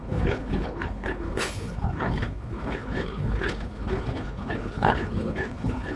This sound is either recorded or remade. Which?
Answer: remade